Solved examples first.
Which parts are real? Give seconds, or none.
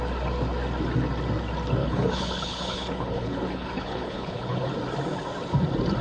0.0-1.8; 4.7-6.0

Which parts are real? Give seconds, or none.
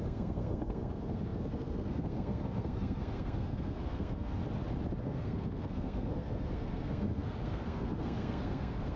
4.4-5.0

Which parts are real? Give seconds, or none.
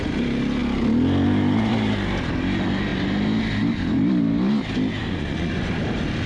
0.0-5.0; 5.8-6.3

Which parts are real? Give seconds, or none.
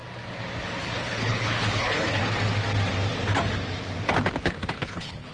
0.0-0.8; 2.2-4.4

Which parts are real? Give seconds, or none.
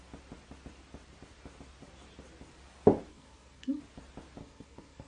0.0-3.1; 3.8-4.4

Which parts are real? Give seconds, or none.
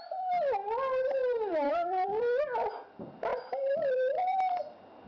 0.0-1.2; 2.4-3.3; 4.4-5.1